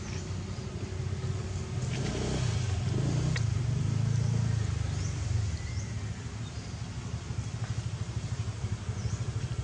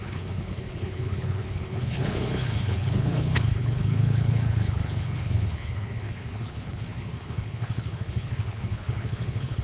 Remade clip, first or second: second